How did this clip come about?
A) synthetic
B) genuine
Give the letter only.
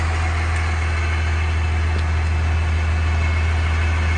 B